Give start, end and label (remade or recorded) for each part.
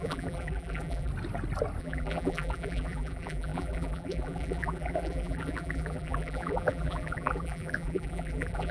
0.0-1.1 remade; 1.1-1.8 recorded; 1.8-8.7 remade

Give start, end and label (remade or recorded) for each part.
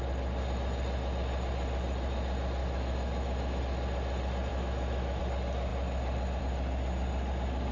0.0-2.6 recorded; 2.6-3.6 remade; 3.6-4.5 recorded; 4.5-5.2 remade; 5.2-7.7 recorded